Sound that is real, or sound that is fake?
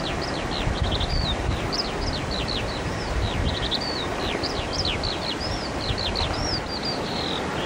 fake